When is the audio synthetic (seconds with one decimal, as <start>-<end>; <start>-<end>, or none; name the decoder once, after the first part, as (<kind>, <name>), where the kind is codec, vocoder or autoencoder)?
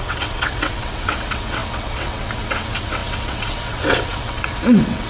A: 0.0-5.1 (vocoder, WaveNeXt)